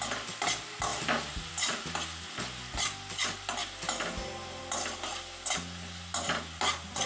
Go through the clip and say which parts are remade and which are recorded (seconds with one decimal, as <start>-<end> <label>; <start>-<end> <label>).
0.0-0.9 recorded; 0.9-1.5 remade; 1.5-7.1 recorded